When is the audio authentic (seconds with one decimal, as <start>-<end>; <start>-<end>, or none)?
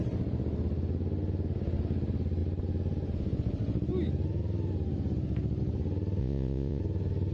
0.0-6.2; 6.8-7.3